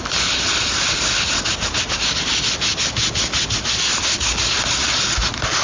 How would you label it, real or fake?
real